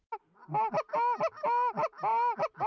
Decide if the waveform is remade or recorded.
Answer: recorded